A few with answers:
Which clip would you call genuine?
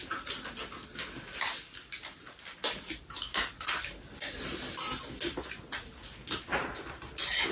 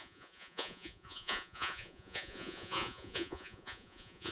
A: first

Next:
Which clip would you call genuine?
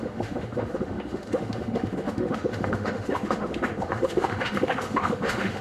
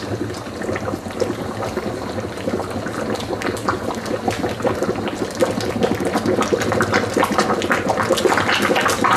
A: second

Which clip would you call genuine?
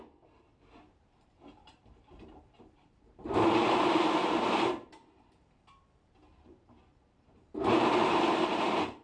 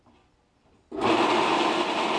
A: second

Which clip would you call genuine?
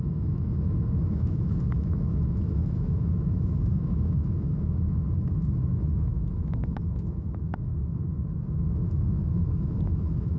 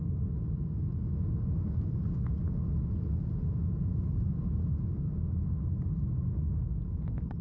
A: second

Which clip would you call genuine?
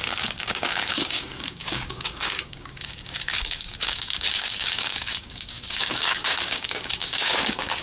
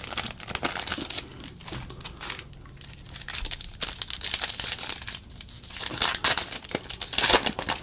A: second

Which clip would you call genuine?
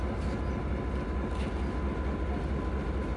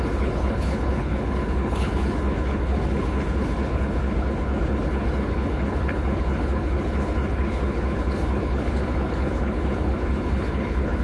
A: first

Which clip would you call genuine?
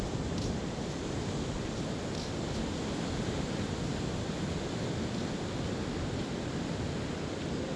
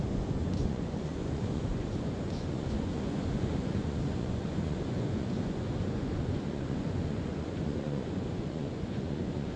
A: first